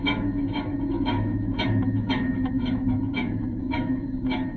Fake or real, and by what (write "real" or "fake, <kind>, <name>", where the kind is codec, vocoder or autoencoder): fake, autoencoder, DAC-VAE